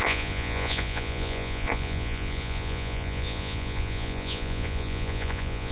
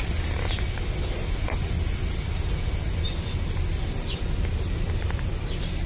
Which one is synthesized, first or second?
first